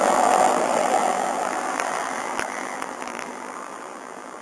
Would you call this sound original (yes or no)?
no